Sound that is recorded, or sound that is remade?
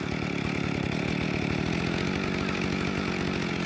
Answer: recorded